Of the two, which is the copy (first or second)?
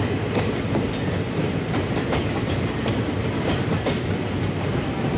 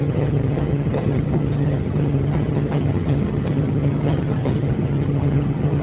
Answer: second